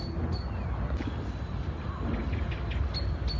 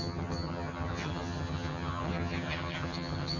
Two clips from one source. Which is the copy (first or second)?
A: second